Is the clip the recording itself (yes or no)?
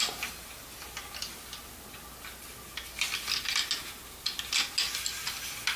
yes